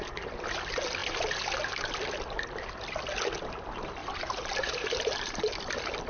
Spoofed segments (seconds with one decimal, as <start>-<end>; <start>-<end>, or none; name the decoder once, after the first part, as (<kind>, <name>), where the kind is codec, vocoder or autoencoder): 4.0-5.5 (vocoder, BigVGAN v2)